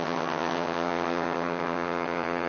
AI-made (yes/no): yes